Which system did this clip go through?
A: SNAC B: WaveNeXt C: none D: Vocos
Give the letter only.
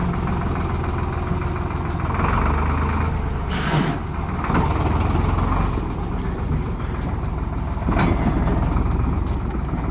C